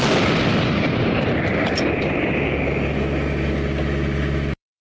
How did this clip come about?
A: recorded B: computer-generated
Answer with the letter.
B